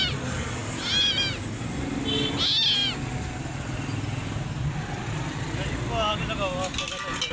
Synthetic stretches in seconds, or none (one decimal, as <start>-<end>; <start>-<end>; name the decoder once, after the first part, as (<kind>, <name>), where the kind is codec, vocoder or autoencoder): none